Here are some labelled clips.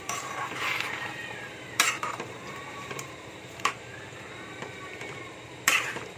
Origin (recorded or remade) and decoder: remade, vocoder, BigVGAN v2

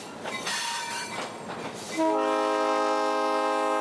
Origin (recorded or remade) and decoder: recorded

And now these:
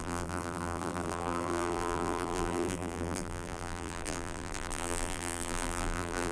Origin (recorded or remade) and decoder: remade, vocoder, BigVGAN v2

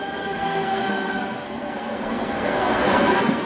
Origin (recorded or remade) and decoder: remade, codec, SNAC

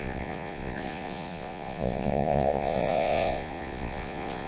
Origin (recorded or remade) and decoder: remade, vocoder, Vocos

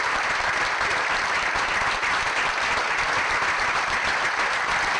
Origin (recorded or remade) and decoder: recorded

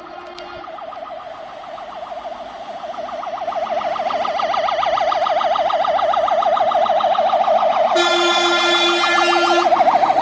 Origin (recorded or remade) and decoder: recorded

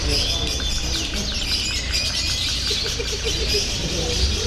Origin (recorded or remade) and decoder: recorded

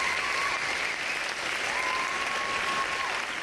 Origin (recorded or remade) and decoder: recorded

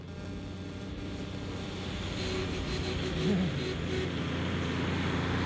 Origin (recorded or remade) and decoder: recorded